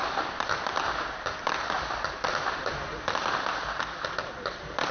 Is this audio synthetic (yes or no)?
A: no